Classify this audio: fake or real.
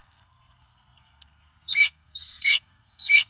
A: fake